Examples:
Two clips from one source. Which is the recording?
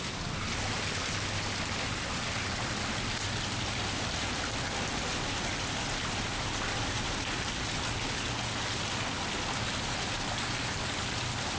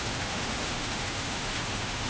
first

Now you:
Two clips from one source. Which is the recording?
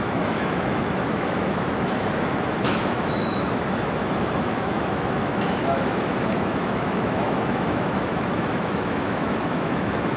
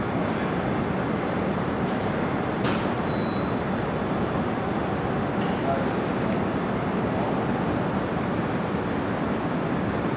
second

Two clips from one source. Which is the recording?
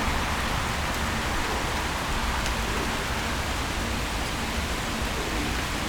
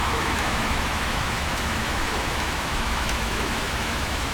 first